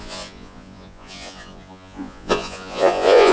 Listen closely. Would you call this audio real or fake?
fake